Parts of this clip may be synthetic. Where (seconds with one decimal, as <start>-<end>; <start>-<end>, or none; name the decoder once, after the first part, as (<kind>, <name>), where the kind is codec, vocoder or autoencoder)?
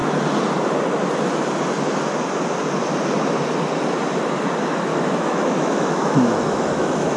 4.9-7.2 (autoencoder, DAC-VAE)